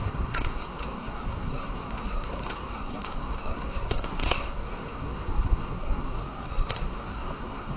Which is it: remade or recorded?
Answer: remade